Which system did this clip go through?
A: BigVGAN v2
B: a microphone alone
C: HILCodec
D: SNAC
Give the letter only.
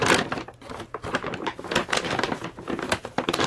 A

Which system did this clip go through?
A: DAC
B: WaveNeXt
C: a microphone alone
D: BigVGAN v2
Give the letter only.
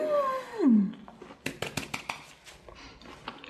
C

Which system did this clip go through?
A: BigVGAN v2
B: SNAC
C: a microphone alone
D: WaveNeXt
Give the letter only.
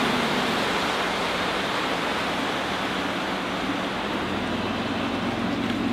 C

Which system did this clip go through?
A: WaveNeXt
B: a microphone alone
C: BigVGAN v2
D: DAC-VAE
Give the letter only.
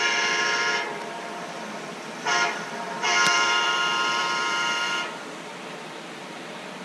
C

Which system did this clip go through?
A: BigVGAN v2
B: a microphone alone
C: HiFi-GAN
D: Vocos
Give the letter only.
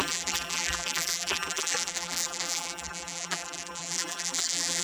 A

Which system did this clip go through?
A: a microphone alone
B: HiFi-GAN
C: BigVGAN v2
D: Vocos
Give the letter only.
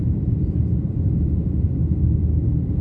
C